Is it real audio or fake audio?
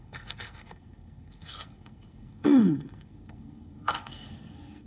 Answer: fake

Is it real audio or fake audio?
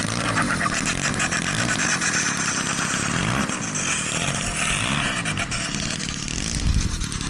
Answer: real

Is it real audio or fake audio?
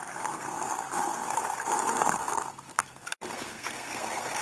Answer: fake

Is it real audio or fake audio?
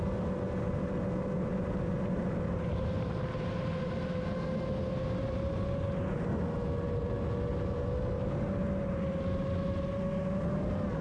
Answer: real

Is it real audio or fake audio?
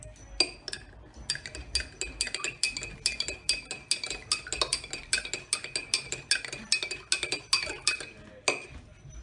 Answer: real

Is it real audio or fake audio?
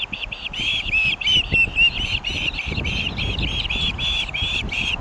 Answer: real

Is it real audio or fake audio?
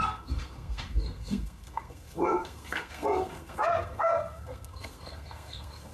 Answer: fake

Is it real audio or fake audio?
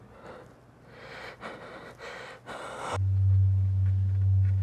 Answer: real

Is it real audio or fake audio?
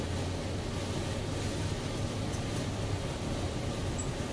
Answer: real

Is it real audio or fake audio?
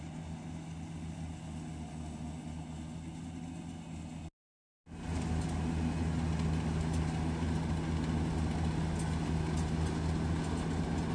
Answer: real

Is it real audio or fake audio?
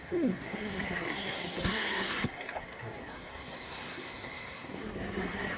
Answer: fake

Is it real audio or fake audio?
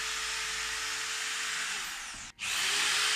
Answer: real